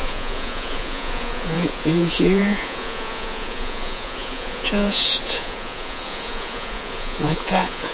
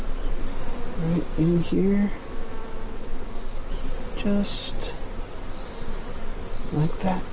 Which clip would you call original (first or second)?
second